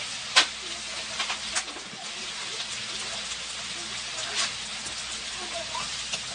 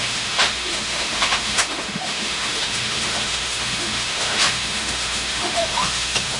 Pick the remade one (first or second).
second